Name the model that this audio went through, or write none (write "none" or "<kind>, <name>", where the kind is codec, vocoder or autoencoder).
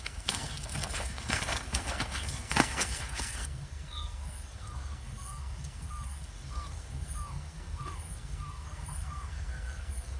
codec, SNAC